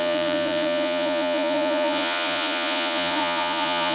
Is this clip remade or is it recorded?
remade